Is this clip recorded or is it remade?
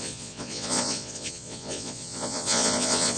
remade